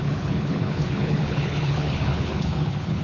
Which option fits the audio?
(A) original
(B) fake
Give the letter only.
B